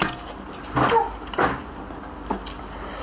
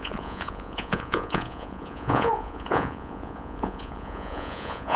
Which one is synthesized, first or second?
second